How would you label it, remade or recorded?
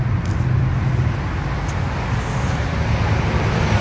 recorded